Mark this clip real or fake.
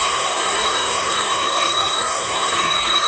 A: fake